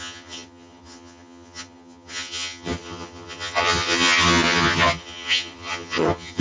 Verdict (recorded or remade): remade